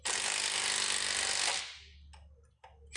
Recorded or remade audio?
recorded